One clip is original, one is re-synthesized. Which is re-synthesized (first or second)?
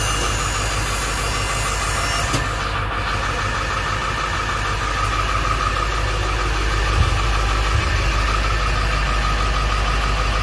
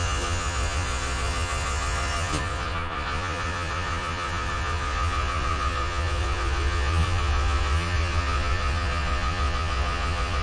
second